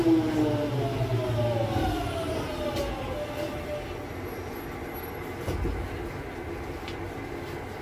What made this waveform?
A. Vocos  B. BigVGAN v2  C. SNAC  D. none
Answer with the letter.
D